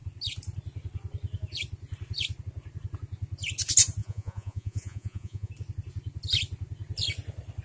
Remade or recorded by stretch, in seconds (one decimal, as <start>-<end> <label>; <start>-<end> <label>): 0.0-4.0 recorded; 4.0-5.5 remade; 5.5-7.6 recorded